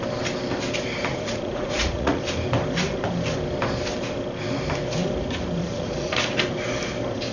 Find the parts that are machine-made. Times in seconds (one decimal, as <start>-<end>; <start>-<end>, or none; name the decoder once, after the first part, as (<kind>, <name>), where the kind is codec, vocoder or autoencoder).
1.1-2.2 (vocoder, Vocos); 5.6-6.2